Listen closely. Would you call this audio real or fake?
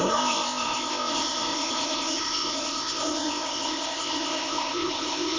fake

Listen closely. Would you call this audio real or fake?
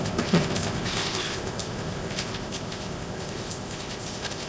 fake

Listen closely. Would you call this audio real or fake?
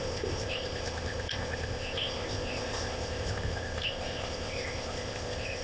fake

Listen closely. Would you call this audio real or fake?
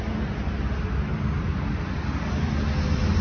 real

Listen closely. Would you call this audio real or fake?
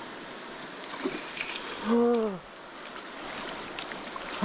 real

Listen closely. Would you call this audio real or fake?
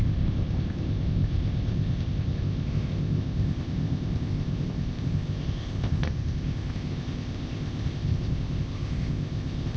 fake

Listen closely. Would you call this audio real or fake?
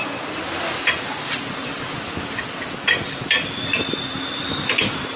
real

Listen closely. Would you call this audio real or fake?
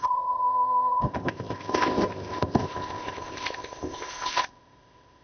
fake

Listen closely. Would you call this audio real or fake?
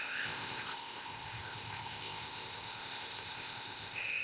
fake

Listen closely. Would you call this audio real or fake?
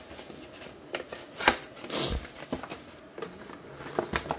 real